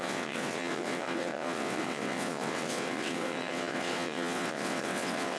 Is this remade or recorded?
remade